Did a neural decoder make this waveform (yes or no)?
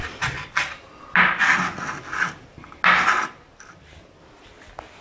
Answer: no